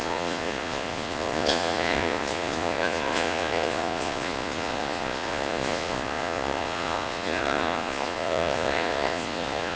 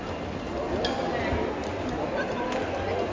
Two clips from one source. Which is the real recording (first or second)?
second